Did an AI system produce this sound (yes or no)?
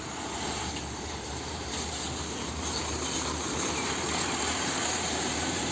yes